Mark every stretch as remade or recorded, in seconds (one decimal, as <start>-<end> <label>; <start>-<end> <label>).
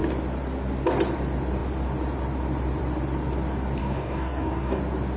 0.0-3.8 recorded; 3.8-4.8 remade; 4.8-5.2 recorded